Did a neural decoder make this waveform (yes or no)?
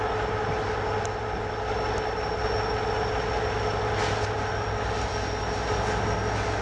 no